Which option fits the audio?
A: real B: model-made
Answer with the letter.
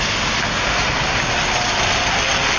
A